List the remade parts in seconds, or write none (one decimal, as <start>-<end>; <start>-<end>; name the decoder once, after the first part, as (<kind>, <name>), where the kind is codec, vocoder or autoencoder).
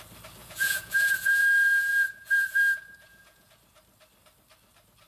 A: 0.4-3.5 (vocoder, Vocos)